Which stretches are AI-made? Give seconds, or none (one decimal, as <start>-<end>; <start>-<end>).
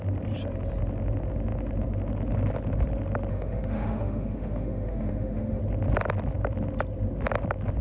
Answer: 3.3-5.6